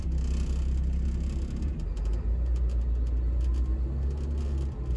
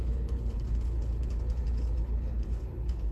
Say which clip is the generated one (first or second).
second